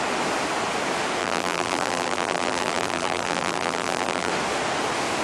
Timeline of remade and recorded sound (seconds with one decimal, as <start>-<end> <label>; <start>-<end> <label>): 0.0-1.2 recorded; 1.2-4.3 remade; 4.3-5.2 recorded